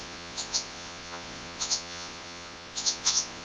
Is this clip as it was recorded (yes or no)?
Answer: no